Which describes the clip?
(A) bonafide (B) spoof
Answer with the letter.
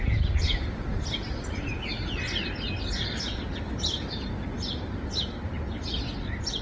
A